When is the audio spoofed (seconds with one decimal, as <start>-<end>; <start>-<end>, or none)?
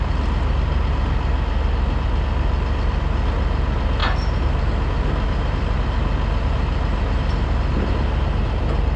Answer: none